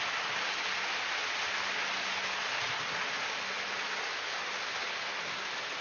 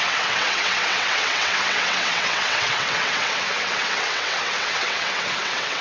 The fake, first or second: second